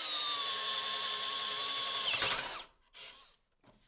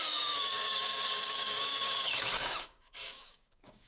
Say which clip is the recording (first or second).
first